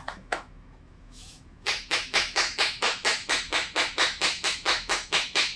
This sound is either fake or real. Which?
fake